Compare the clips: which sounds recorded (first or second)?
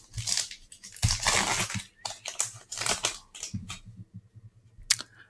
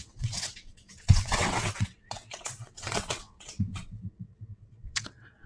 first